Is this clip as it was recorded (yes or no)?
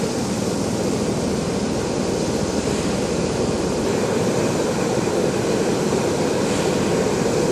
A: yes